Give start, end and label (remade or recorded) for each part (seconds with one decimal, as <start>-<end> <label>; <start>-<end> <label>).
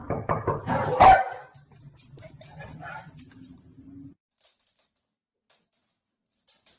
0.0-3.6 remade; 3.6-6.8 recorded